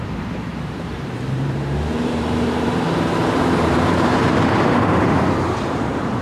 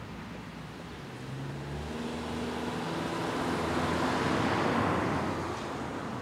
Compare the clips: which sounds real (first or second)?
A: second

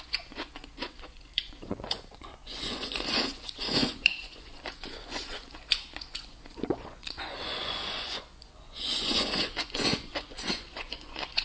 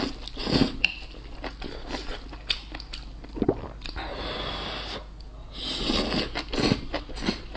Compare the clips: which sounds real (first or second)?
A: second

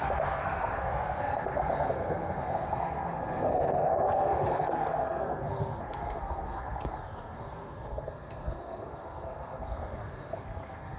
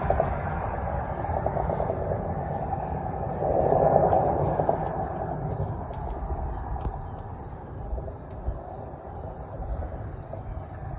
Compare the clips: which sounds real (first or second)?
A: second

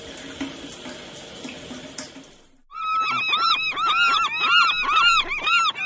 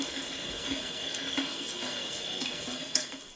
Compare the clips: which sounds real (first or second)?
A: first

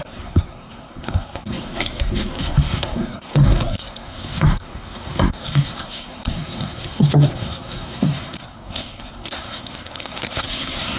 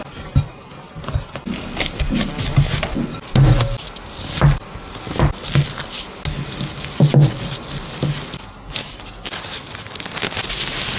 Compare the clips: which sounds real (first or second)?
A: second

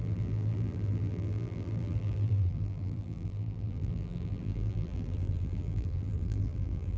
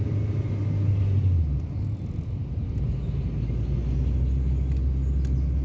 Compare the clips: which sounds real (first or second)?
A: second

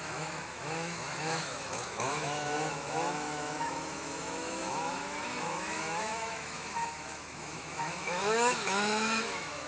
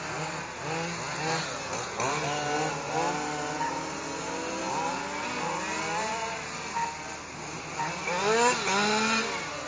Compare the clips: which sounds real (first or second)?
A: second